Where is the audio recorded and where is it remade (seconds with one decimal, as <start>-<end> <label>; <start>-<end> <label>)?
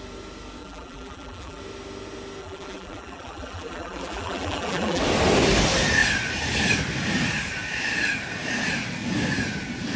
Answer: 0.0-0.6 recorded; 0.6-1.6 remade; 1.6-2.4 recorded; 2.4-5.0 remade; 5.0-10.0 recorded